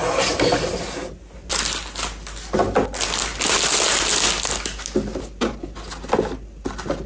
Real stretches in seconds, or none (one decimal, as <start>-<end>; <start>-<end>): 0.0-7.1